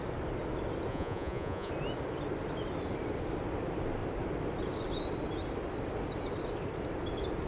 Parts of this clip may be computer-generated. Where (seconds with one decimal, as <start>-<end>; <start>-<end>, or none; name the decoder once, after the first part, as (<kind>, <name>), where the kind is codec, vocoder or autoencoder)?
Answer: 0.9-1.7 (vocoder, Vocos)